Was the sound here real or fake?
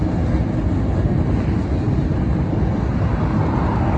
real